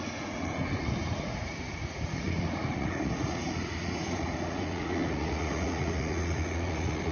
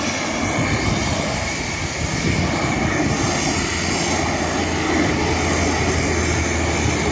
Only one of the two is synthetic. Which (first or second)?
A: first